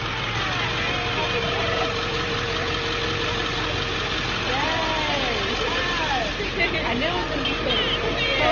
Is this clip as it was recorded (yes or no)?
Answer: yes